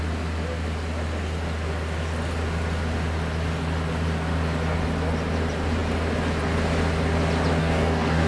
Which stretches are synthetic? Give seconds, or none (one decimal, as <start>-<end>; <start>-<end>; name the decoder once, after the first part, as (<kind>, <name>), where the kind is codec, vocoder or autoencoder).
7.6-8.3 (codec, DAC)

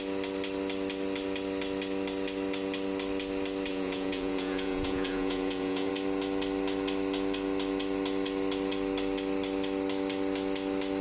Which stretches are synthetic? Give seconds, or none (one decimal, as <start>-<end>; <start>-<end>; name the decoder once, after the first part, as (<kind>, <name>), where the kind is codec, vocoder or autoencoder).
3.7-5.9 (vocoder, Vocos)